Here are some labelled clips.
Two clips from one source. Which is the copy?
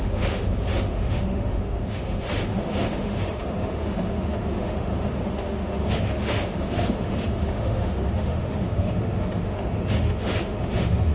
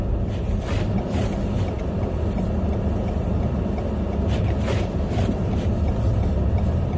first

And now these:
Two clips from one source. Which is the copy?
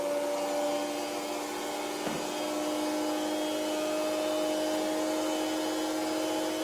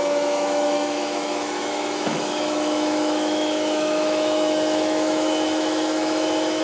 second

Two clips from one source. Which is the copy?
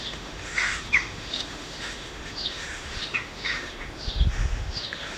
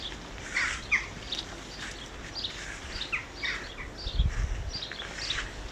first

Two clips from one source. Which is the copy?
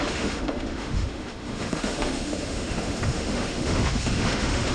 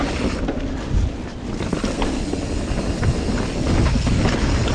first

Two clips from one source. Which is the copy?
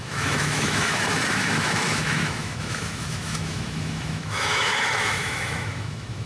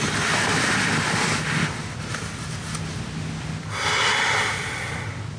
first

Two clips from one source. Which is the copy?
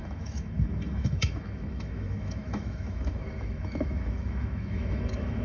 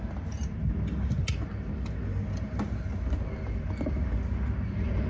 first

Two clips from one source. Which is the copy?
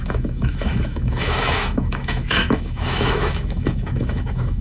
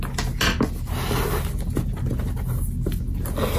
first